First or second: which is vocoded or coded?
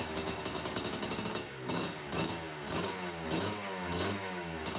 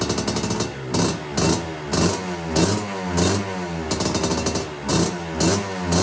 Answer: first